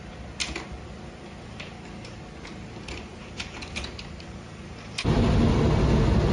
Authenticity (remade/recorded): recorded